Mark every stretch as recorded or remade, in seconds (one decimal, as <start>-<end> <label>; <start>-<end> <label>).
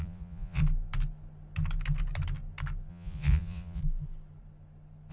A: 0.0-0.6 remade; 0.6-2.9 recorded; 2.9-3.8 remade; 3.8-5.1 recorded